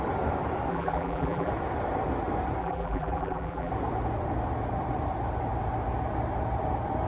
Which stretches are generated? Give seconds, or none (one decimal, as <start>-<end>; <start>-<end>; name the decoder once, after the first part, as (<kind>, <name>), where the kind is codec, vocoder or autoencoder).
0.7-1.5 (vocoder, BigVGAN v2); 2.6-3.7